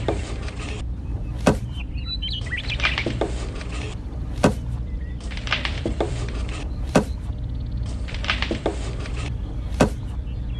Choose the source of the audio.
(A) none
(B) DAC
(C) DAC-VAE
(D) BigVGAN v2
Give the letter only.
D